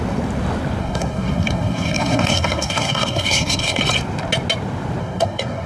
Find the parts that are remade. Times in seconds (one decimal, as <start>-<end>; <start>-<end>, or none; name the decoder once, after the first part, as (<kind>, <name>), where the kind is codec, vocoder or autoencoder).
0.8-3.8 (codec, SNAC); 5.0-5.7